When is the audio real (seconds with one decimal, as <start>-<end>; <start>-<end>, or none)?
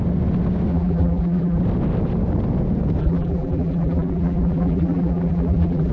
0.0-0.7; 1.6-3.0